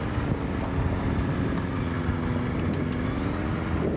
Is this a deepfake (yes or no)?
no